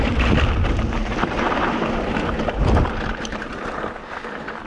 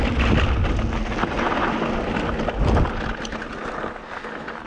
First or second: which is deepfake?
first